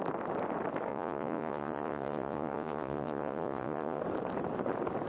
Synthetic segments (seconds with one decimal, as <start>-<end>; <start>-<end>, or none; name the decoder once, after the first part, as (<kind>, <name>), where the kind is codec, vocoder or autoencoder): 0.9-4.0 (vocoder, Vocos)